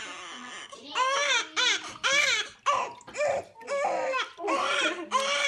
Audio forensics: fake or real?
real